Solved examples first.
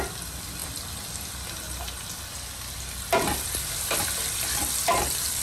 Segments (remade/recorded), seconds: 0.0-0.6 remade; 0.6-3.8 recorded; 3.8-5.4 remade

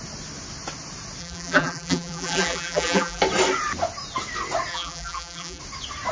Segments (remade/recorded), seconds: 0.0-1.2 recorded; 1.2-3.2 remade; 3.2-4.7 recorded; 4.7-5.6 remade; 5.6-6.1 recorded